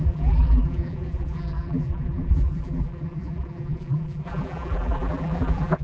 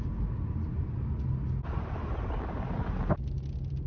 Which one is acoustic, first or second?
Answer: second